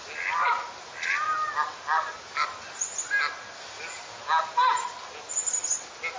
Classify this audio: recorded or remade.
recorded